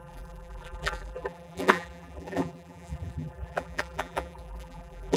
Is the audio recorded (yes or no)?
no